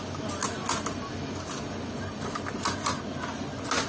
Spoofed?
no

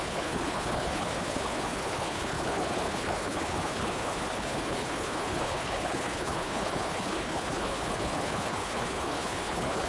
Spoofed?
yes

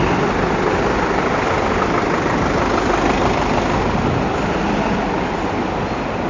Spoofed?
no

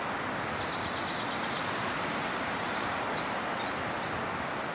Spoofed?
no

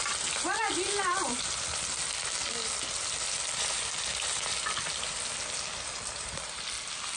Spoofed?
no